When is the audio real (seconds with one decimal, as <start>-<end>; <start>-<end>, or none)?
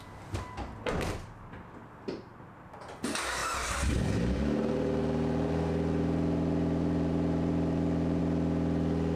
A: 0.0-3.4; 8.2-9.2